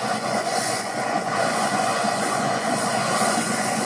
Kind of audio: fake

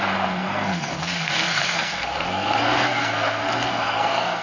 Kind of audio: fake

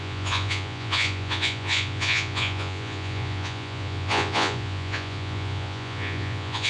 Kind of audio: fake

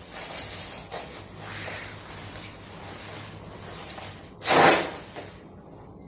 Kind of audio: real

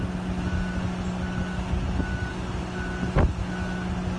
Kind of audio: real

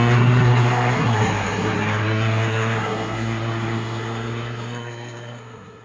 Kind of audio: fake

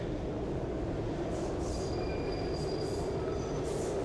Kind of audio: real